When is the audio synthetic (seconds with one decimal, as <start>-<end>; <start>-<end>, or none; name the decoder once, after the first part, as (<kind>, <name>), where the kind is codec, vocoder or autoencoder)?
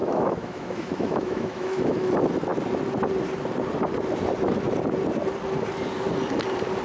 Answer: 0.0-2.1 (autoencoder, DAC-VAE)